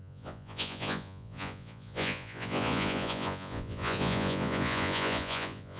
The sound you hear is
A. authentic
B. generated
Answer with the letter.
B